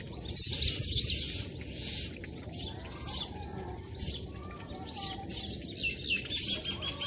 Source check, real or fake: real